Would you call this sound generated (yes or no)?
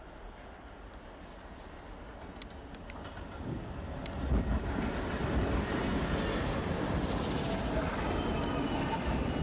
no